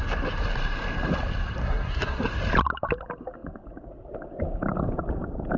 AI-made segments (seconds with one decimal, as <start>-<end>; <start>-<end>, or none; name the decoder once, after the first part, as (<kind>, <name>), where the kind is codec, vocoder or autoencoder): 1.6-2.2 (codec, SNAC)